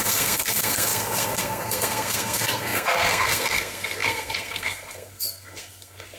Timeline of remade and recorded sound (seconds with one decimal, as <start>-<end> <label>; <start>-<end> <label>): 0.0-6.2 remade